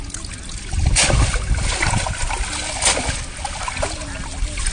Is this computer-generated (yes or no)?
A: no